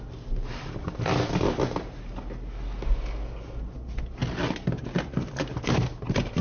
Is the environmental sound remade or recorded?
recorded